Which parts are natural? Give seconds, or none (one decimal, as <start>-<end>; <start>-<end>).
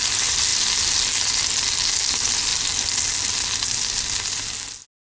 0.0-5.0